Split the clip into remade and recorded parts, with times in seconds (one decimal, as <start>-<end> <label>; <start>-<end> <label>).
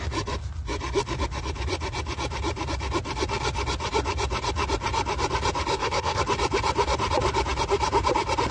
0.0-5.7 recorded; 5.7-6.2 remade; 6.2-8.5 recorded